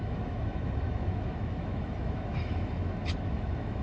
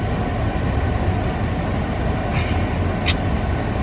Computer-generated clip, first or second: first